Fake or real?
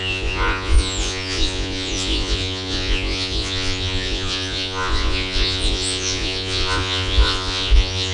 fake